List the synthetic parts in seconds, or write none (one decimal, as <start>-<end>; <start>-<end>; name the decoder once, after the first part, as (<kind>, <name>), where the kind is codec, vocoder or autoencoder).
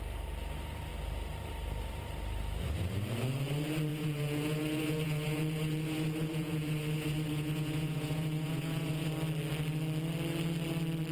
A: 3.9-9.1 (vocoder, Vocos)